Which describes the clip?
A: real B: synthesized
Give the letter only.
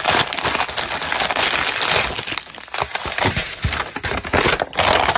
A